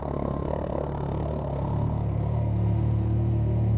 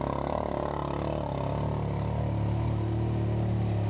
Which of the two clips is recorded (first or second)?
second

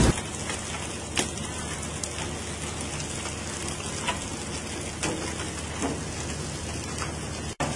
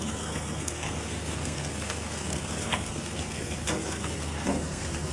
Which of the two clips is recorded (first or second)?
first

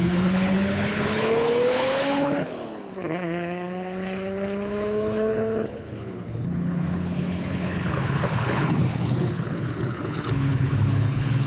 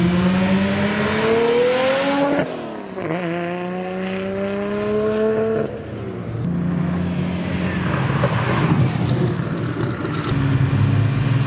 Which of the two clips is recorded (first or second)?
second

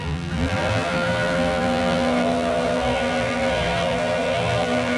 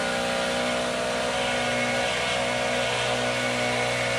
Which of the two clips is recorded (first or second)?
second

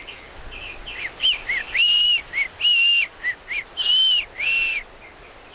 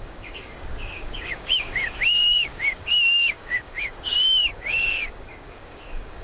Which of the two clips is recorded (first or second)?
first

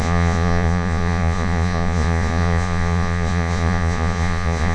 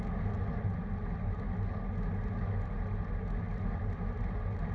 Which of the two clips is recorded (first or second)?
second